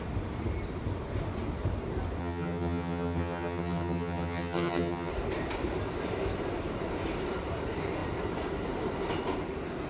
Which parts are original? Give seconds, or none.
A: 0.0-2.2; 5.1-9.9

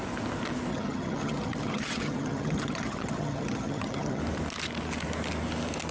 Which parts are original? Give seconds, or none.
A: 0.0-0.7; 4.2-5.9